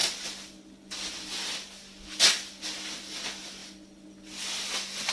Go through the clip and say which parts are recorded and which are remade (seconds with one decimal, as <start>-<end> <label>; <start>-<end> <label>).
0.0-5.1 recorded